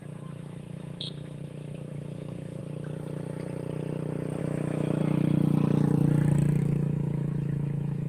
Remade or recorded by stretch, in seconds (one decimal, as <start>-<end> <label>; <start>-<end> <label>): 0.0-2.6 remade; 2.6-4.4 recorded; 4.4-5.0 remade; 5.0-6.6 recorded; 6.6-8.1 remade